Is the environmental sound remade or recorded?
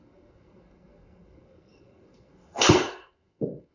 remade